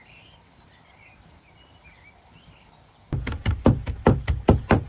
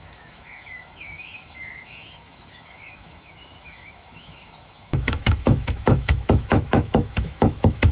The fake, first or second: second